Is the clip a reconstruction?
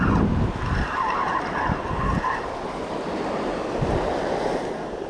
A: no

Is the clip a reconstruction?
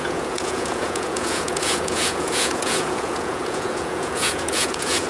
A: yes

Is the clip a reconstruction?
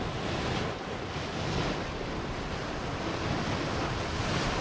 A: no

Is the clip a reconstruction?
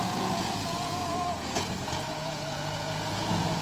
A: yes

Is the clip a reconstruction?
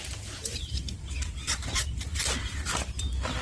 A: no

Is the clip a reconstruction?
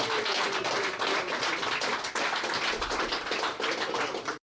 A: yes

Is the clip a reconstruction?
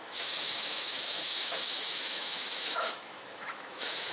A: yes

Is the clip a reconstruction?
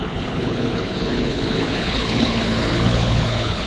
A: yes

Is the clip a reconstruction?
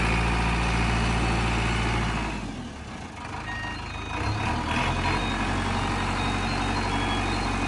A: no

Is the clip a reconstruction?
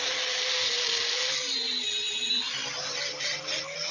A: no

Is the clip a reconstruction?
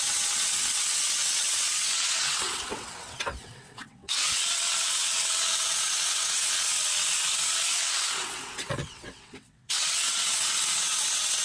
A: yes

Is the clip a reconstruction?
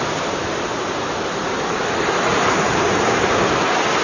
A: yes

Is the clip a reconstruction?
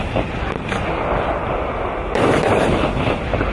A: no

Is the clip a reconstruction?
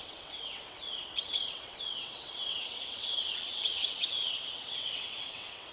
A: yes